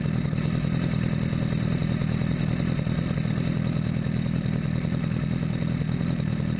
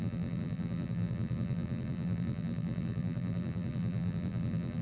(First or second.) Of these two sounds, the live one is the first